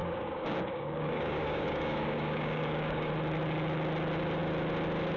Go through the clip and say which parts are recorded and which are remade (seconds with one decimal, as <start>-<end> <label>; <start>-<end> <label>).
0.0-3.1 remade; 3.1-5.2 recorded